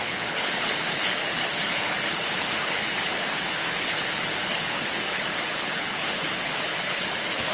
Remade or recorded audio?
remade